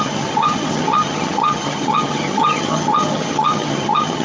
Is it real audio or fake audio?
fake